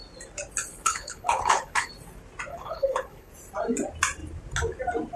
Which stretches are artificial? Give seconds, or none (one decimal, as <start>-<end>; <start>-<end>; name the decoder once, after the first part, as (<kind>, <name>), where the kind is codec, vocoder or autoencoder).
0.7-1.9 (codec, HILCodec); 2.5-3.3